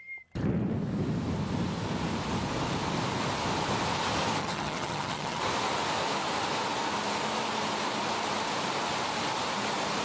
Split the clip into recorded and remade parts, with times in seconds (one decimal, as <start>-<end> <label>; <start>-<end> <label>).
0.0-4.4 recorded; 4.4-5.4 remade; 5.4-10.0 recorded